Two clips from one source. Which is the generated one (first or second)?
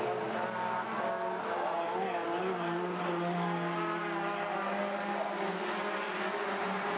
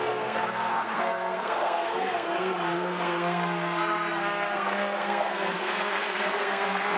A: second